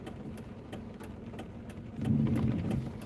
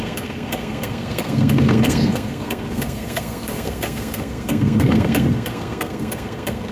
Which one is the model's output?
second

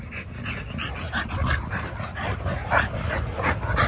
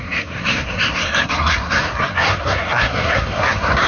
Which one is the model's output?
second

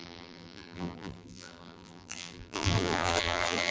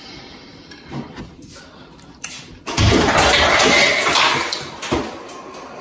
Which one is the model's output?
first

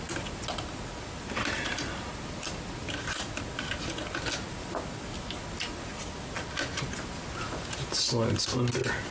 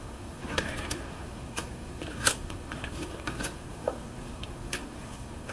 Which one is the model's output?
second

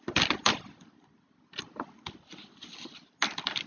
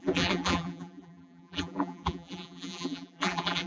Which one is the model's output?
second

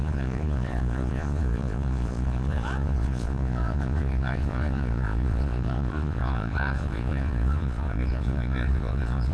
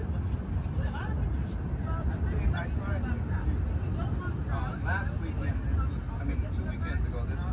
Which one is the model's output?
first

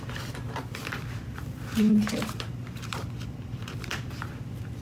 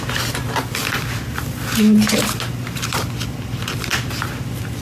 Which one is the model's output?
first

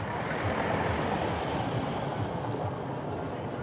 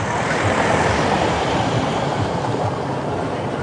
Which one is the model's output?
second